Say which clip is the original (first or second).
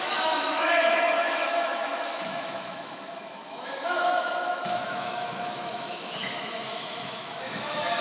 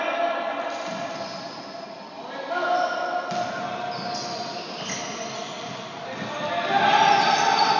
second